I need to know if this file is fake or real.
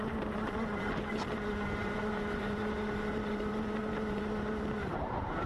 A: fake